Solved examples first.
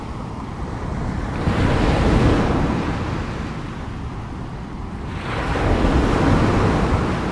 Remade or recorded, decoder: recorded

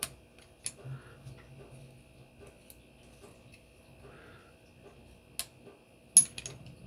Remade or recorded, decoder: recorded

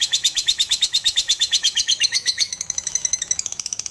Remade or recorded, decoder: remade, autoencoder, DAC-VAE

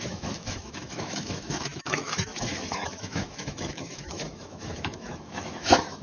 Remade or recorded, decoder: remade, autoencoder, DAC-VAE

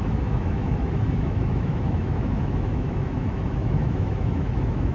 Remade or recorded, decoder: remade, autoencoder, DAC-VAE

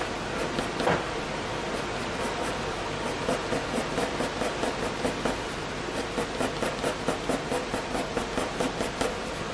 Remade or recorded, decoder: recorded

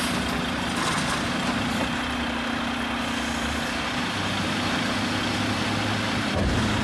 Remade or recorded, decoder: recorded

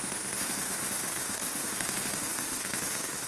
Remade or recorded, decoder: remade, autoencoder, DAC-VAE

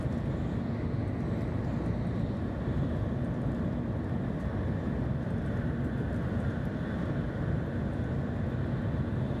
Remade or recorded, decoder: recorded